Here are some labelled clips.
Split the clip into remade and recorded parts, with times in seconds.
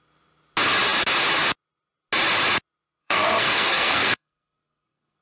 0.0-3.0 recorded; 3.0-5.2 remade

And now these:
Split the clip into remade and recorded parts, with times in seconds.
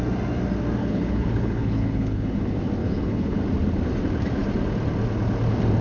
0.0-0.8 recorded; 0.8-2.4 remade; 2.4-2.8 recorded; 2.8-3.4 remade; 3.4-5.8 recorded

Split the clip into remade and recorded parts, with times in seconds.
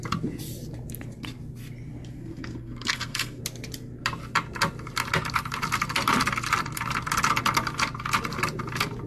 0.0-2.1 recorded; 2.1-3.4 remade; 3.4-9.1 recorded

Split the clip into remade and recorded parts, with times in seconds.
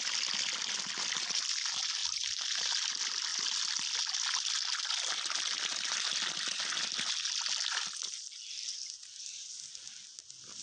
0.0-2.0 recorded; 2.0-2.7 remade; 2.7-10.6 recorded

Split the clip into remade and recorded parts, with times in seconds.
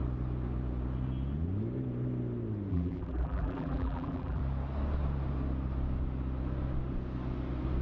0.0-2.7 recorded; 2.7-4.4 remade; 4.4-7.8 recorded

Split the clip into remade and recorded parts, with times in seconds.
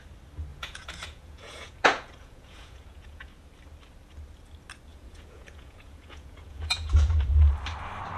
0.0-0.5 recorded; 0.5-3.3 remade; 3.3-4.9 recorded; 4.9-7.1 remade; 7.1-8.2 recorded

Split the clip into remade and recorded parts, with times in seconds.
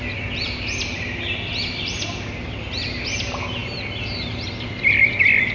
0.0-5.5 recorded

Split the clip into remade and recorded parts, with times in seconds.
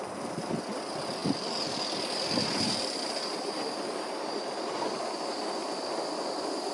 0.0-6.7 recorded